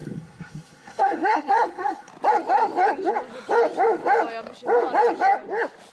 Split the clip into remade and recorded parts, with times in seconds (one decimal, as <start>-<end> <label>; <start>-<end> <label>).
0.0-2.1 remade; 2.1-5.9 recorded

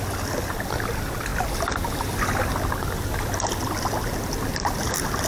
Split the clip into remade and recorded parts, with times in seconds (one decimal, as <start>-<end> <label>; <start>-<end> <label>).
0.0-5.3 recorded